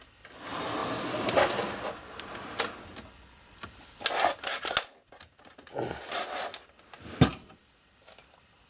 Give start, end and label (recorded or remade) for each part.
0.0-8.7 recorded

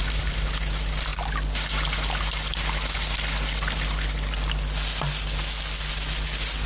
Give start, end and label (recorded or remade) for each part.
0.0-6.7 recorded